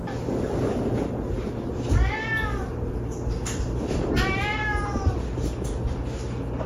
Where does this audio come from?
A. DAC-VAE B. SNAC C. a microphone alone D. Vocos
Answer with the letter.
C